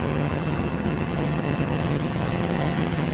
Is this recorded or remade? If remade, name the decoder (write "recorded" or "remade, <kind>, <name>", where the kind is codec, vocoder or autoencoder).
remade, vocoder, HiFi-GAN